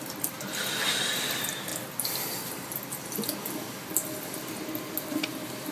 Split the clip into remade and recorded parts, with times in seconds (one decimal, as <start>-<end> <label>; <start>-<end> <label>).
0.0-5.7 recorded